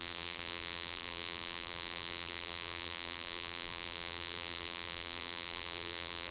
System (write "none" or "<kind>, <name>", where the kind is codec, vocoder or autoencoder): vocoder, BigVGAN v2